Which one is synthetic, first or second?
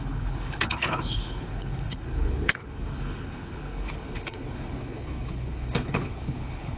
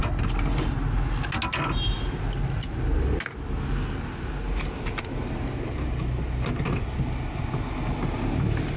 first